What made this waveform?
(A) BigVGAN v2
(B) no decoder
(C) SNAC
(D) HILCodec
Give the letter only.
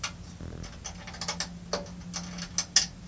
B